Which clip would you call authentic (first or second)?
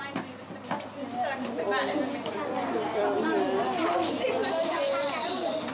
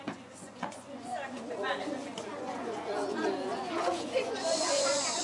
first